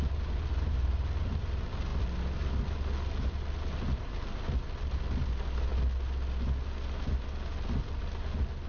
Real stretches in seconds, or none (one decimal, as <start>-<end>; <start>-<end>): 0.0-8.7